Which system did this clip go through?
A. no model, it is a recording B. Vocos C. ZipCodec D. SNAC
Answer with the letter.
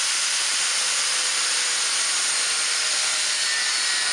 A